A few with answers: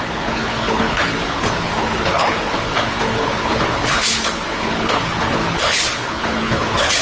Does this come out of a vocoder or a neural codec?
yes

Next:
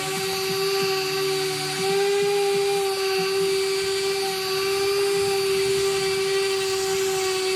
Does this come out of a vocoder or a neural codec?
no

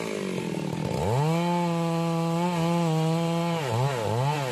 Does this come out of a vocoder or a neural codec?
no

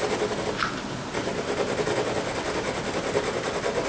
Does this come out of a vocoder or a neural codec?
no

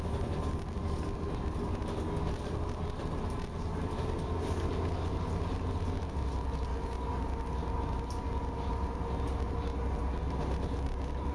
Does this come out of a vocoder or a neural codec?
no